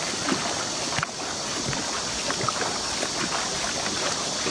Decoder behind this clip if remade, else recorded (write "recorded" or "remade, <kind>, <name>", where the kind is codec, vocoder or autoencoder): recorded